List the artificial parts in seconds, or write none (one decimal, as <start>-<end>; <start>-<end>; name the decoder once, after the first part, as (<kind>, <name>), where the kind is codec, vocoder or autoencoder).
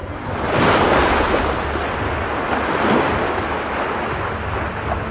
none